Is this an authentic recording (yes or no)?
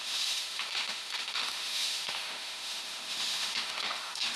no